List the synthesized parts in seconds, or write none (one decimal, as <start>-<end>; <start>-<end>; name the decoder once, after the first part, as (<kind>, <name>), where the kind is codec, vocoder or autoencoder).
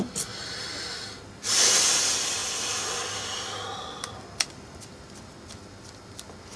none